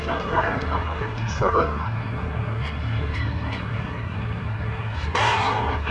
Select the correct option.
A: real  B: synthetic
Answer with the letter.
B